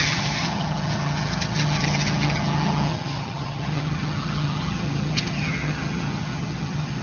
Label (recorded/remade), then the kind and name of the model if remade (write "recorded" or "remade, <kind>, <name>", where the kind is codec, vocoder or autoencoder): remade, vocoder, HiFi-GAN